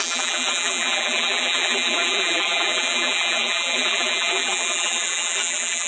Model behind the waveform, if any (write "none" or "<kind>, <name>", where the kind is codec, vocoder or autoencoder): vocoder, BigVGAN v2